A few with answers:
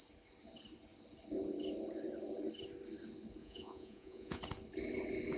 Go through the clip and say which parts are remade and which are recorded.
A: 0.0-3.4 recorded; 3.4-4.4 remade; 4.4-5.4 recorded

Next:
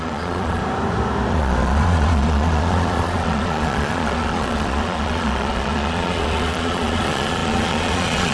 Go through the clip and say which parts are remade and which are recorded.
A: 0.0-0.6 remade; 0.6-1.3 recorded; 1.3-8.3 remade

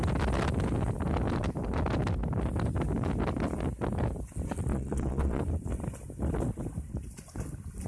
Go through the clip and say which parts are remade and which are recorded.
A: 0.0-4.7 recorded; 4.7-5.4 remade; 5.4-7.9 recorded

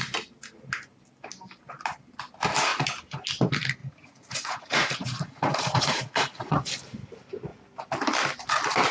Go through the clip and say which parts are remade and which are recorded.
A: 0.0-3.8 recorded; 3.8-6.7 remade; 6.7-8.9 recorded

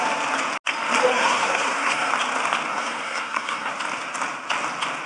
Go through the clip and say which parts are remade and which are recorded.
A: 0.0-1.1 recorded; 1.1-2.1 remade; 2.1-2.7 recorded; 2.7-3.7 remade; 3.7-5.1 recorded